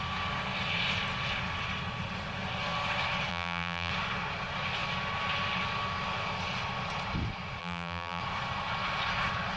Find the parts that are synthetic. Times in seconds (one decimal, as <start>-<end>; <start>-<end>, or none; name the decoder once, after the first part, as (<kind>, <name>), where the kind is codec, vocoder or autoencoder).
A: 3.3-3.9 (vocoder, BigVGAN v2); 7.6-8.2